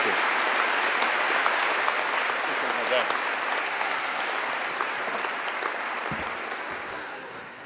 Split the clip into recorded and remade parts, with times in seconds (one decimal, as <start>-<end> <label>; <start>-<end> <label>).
0.0-3.6 recorded; 3.6-4.2 remade; 4.2-6.9 recorded; 6.9-7.7 remade